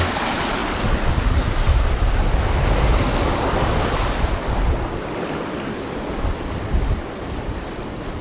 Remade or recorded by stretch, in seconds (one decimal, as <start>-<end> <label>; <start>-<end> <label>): 0.0-0.6 remade; 0.6-5.4 recorded; 5.4-8.2 remade